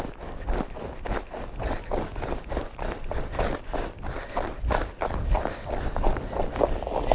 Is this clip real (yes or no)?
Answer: yes